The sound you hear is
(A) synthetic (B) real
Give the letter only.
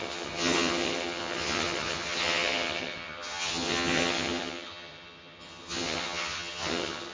A